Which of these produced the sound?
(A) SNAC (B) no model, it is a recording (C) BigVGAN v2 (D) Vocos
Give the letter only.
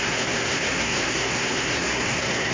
A